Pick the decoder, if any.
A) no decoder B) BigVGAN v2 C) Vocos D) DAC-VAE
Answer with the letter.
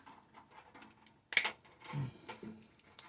A